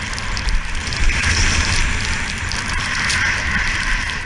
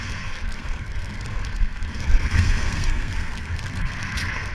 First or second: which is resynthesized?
second